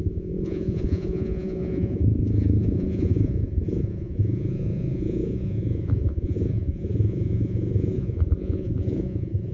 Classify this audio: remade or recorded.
remade